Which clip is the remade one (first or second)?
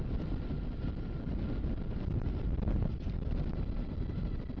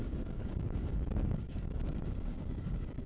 second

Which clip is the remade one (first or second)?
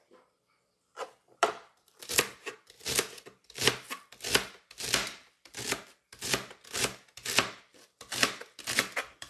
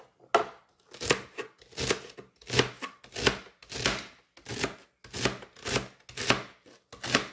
first